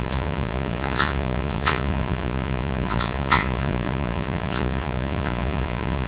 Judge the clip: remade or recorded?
remade